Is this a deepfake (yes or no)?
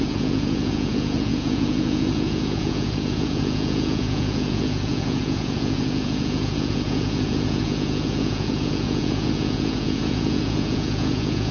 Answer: yes